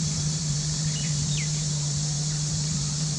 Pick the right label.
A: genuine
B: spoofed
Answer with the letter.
B